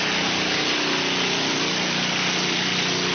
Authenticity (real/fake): real